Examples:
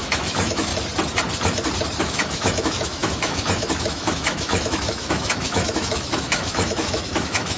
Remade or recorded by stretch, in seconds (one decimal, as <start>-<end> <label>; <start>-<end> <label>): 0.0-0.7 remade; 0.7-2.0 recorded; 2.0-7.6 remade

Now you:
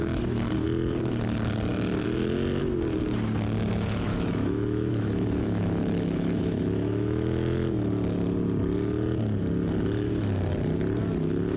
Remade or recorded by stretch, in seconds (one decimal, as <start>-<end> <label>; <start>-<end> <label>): 0.0-4.1 recorded; 4.1-7.9 remade; 7.9-11.6 recorded

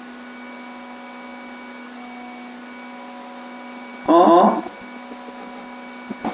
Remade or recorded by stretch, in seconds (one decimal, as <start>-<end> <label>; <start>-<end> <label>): 0.0-6.3 recorded

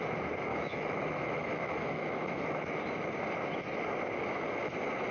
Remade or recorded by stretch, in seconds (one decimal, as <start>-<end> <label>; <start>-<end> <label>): 0.0-0.5 recorded; 0.5-2.8 remade; 2.8-5.1 recorded

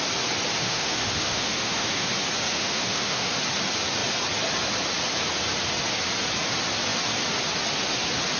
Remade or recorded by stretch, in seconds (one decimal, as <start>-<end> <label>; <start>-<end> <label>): 0.0-0.6 recorded; 0.6-2.1 remade; 2.1-2.5 recorded; 2.5-3.3 remade; 3.3-8.4 recorded

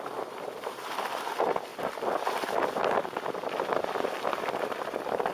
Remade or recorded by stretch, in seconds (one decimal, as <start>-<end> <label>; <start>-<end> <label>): 0.0-5.3 recorded